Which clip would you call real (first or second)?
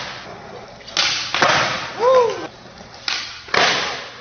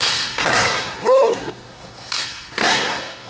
first